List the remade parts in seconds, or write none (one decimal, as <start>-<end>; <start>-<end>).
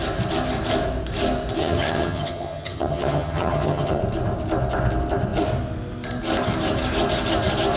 1.6-4.0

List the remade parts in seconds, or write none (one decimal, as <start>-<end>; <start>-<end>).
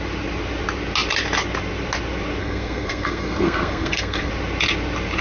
2.4-4.3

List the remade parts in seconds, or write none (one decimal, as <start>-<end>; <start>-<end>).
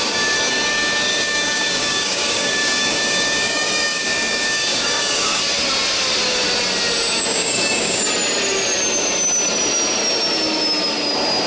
1.1-5.4; 7.3-8.1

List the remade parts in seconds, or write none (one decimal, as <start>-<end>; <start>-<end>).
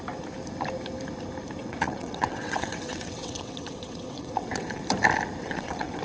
1.6-4.8; 5.4-6.0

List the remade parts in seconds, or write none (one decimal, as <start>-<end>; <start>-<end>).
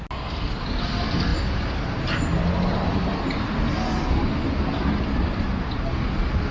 none